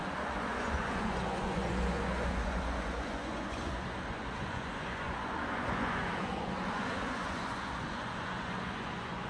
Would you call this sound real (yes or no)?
no